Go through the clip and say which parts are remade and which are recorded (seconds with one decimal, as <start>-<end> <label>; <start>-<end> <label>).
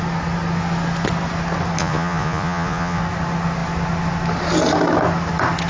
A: 0.0-1.8 recorded; 1.8-3.0 remade; 3.0-5.7 recorded